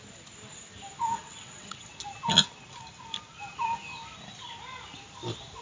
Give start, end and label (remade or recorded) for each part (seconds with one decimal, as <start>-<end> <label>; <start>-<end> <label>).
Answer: 0.0-1.2 recorded; 1.2-1.9 remade; 1.9-5.6 recorded